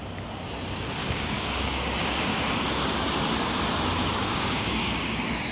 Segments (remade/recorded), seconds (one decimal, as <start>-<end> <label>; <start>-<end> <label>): 0.0-1.0 recorded; 1.0-2.4 remade; 2.4-4.0 recorded; 4.0-5.5 remade